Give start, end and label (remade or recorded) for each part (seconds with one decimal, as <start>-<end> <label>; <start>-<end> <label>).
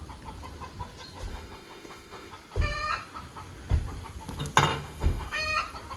0.0-1.3 recorded; 1.3-2.3 remade; 2.3-4.7 recorded; 4.7-5.4 remade; 5.4-6.0 recorded